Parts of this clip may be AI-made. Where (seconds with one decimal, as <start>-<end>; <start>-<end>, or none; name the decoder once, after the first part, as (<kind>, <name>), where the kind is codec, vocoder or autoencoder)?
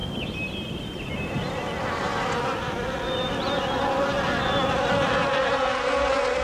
none